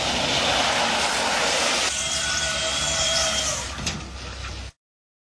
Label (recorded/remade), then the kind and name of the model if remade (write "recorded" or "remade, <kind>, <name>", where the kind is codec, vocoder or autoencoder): recorded